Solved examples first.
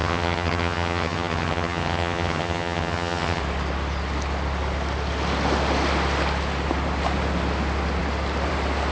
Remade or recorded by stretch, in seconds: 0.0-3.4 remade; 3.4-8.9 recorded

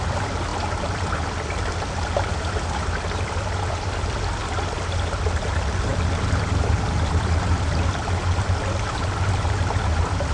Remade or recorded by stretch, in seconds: 0.0-0.5 remade; 0.5-3.2 recorded; 3.2-4.4 remade; 4.4-5.3 recorded; 5.3-10.3 remade

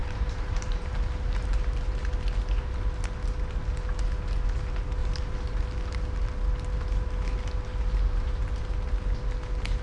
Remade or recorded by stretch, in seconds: 0.0-2.1 remade; 2.1-5.0 recorded; 5.0-5.6 remade; 5.6-7.7 recorded; 7.7-8.6 remade; 8.6-9.8 recorded

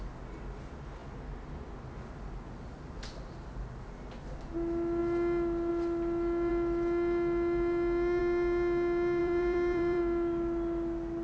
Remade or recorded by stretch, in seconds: 0.0-9.2 recorded; 9.2-10.0 remade; 10.0-11.2 recorded

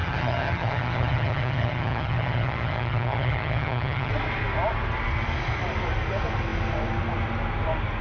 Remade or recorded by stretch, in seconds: 0.0-4.1 remade; 4.1-8.0 recorded